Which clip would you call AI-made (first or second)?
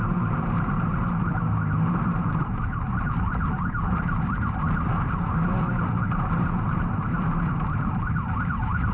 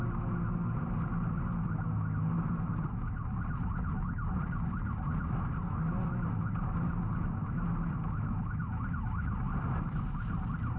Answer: first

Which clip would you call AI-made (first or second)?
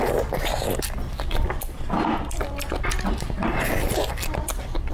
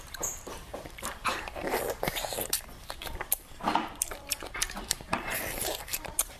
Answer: second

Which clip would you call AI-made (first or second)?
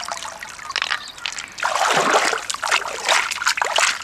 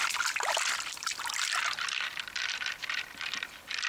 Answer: second